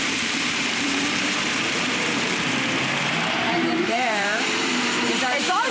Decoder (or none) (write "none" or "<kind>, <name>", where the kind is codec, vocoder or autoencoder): vocoder, BigVGAN v2